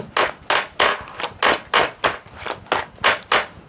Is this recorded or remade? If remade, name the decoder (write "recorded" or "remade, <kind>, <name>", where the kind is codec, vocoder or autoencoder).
recorded